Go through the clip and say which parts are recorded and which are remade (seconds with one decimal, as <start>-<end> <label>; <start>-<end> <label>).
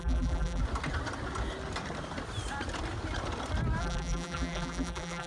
0.0-0.6 remade; 0.6-3.8 recorded; 3.8-5.3 remade